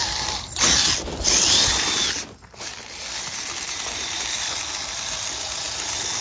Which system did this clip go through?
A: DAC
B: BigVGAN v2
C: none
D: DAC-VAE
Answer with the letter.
C